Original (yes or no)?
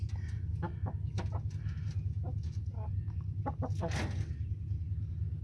yes